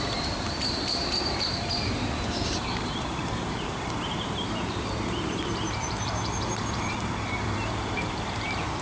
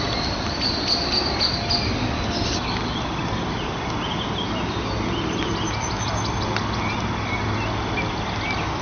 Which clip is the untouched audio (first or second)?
second